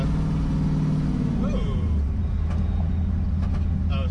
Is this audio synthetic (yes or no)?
no